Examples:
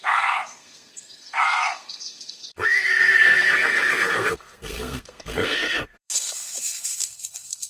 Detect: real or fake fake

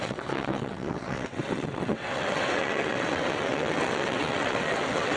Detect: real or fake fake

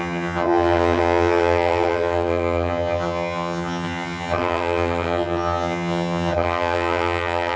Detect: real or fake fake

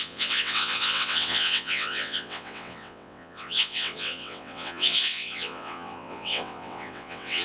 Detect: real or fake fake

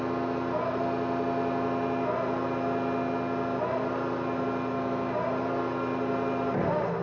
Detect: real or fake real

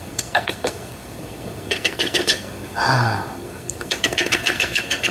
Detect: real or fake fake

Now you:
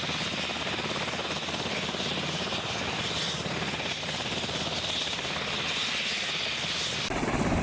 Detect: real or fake real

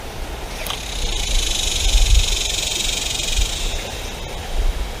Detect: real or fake real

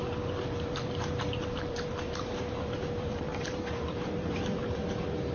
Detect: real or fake fake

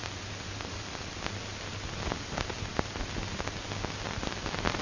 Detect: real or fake real